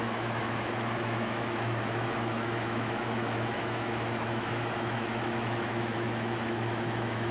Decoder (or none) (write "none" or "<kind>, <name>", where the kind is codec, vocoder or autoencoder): autoencoder, DAC-VAE